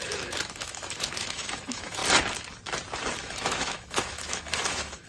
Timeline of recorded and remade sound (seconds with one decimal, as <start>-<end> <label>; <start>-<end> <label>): 0.0-2.0 remade; 2.0-3.2 recorded; 3.2-5.1 remade